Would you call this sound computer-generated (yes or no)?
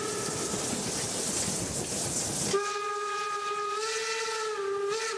no